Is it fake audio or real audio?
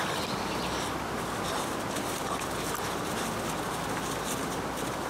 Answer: real